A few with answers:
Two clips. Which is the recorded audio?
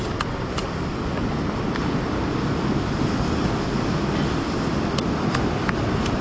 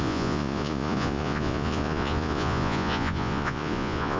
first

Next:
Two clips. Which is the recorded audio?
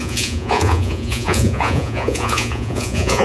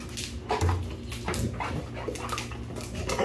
second